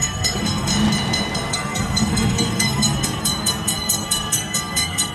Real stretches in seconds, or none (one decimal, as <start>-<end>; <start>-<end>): 0.7-1.5